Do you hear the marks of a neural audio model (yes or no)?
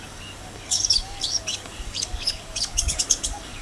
yes